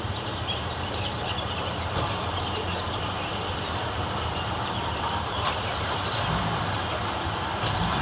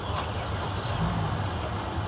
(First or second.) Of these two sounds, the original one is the second